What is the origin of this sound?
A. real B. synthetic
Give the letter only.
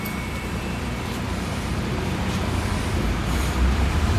B